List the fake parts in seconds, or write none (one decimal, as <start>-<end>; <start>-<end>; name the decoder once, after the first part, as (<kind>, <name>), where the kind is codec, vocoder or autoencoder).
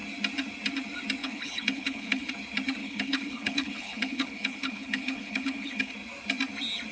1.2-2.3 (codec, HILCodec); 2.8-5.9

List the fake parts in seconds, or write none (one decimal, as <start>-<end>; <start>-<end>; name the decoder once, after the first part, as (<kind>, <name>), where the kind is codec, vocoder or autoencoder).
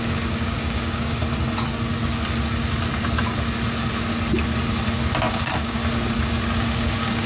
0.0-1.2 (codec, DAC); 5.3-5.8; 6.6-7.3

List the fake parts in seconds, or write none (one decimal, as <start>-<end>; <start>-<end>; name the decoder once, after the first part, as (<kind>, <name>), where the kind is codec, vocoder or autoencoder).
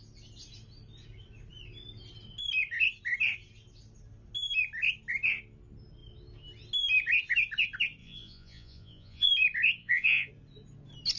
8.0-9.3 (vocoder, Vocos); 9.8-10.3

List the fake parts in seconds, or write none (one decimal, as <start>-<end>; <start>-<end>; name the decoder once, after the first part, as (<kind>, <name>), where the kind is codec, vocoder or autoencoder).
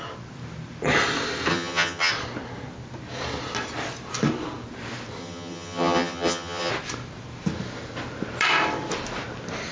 1.5-2.1 (vocoder, HiFi-GAN); 5.2-6.7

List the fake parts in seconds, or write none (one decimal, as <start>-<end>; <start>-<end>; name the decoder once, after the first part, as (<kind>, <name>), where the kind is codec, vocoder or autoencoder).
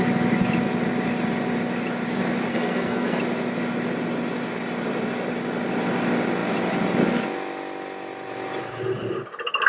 2.5-3.2 (codec, SNAC)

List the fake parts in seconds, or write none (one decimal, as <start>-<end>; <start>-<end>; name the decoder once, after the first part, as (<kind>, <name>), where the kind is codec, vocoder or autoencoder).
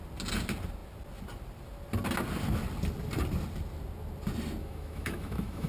4.6-5.7 (autoencoder, DAC-VAE)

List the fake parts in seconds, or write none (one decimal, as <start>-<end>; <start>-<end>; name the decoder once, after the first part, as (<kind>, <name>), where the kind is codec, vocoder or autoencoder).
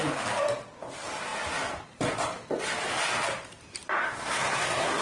4.0-5.0 (codec, SNAC)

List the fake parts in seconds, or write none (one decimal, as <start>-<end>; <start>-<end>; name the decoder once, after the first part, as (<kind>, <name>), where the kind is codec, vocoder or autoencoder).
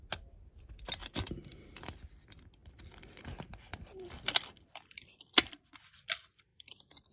1.0-2.0 (vocoder, BigVGAN v2); 2.6-5.6; 6.5-7.1